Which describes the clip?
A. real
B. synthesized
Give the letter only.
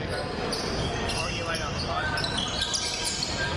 A